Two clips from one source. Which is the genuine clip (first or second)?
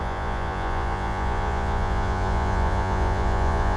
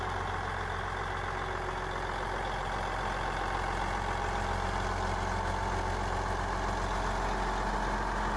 second